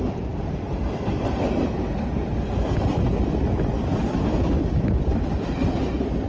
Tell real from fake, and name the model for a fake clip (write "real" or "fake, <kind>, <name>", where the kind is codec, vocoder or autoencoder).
fake, vocoder, BigVGAN v2